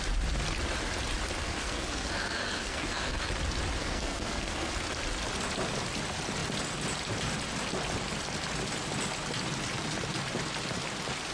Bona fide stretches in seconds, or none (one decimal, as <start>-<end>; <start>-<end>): 0.0-1.4; 3.3-3.8; 4.7-11.3